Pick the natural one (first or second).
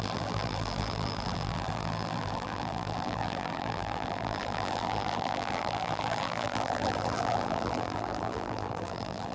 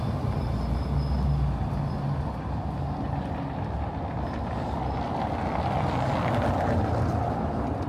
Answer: second